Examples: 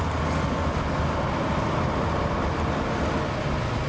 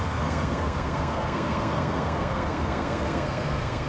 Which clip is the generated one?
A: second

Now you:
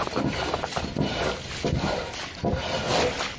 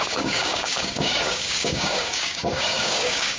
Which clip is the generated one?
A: second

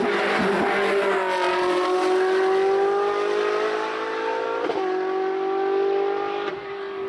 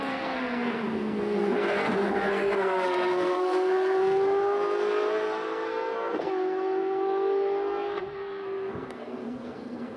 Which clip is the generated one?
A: second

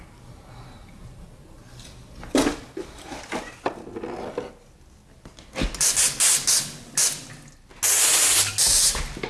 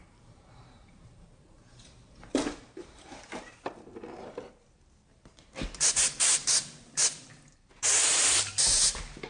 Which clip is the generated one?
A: second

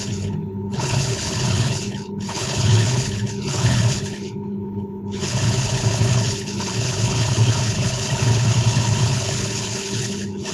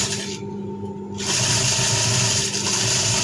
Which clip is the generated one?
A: first